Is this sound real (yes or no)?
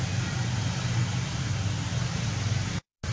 yes